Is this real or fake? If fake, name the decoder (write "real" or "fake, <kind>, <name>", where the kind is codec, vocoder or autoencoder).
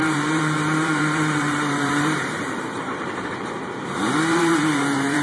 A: fake, vocoder, BigVGAN v2